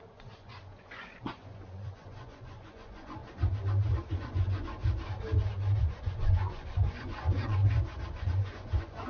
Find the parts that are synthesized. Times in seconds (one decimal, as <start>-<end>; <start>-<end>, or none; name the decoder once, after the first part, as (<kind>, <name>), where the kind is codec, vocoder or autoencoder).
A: 0.0-3.2 (vocoder, Vocos); 4.1-4.8; 5.8-7.6; 8.1-9.1